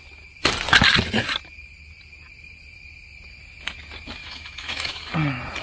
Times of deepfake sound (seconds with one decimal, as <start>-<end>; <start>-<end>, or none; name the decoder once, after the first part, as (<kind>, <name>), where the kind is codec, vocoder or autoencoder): 4.2-5.1 (autoencoder, DAC-VAE)